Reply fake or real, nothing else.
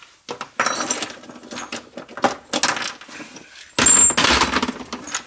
real